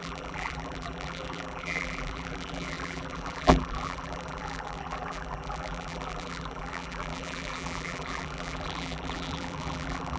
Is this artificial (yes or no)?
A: yes